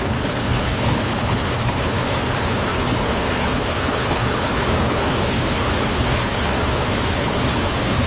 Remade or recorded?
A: remade